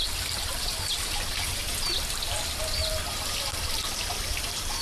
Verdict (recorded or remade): remade